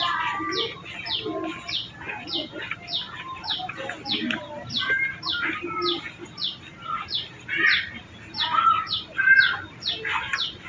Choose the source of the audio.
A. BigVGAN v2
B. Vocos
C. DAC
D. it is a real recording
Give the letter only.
D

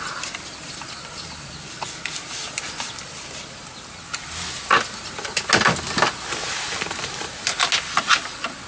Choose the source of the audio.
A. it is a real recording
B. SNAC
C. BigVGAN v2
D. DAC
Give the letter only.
A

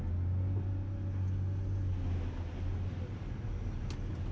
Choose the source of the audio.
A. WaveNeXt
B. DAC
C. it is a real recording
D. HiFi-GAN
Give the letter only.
C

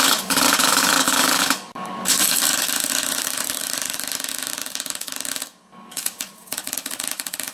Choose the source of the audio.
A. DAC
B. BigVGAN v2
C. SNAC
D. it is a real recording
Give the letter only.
A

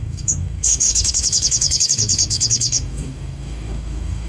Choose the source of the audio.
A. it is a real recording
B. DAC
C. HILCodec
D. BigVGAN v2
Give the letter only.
B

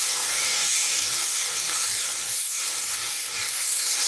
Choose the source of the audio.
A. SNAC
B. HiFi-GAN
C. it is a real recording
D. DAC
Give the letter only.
D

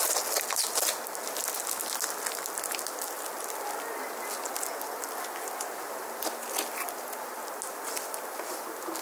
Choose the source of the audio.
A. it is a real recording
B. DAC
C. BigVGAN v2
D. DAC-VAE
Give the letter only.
A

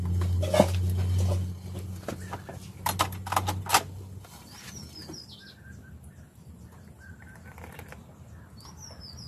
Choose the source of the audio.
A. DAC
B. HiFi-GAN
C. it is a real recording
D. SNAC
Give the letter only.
C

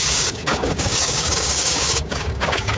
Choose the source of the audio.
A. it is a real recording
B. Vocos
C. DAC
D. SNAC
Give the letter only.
C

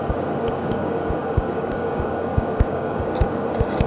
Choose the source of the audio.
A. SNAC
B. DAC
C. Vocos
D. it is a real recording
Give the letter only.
B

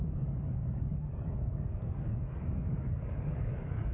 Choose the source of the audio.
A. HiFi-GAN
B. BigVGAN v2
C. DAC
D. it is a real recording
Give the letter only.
C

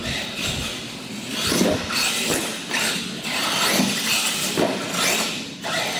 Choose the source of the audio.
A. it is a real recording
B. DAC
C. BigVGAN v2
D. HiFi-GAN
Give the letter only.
A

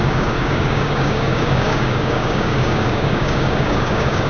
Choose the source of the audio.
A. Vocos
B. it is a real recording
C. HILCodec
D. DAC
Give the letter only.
D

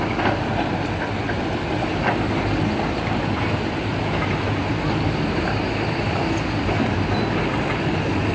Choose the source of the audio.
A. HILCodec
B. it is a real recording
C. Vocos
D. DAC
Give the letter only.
B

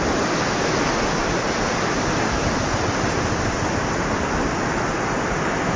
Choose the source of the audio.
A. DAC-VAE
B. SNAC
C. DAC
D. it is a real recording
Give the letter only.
D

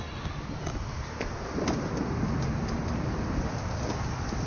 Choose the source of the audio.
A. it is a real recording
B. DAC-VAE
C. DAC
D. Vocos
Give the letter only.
A